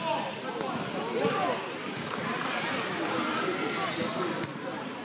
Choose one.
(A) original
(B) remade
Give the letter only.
A